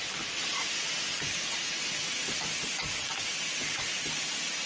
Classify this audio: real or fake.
real